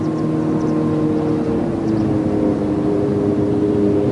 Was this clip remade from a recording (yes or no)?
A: no